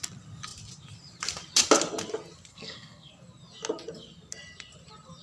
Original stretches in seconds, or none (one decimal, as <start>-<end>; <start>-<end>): 0.0-2.5; 3.1-5.2